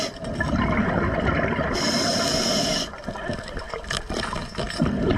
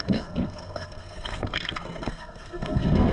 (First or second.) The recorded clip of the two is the first